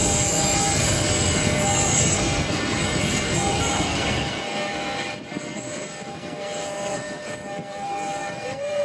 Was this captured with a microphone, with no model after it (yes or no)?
no